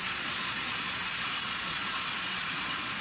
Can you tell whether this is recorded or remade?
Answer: remade